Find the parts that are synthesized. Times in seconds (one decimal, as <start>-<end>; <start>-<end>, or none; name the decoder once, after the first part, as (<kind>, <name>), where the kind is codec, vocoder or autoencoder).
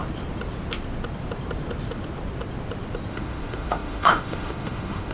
3.1-5.1 (autoencoder, DAC-VAE)